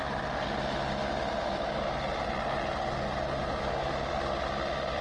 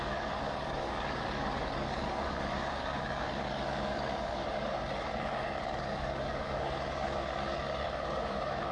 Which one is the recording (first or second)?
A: first